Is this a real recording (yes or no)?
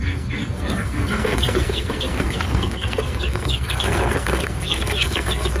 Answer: no